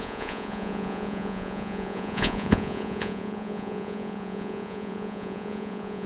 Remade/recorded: remade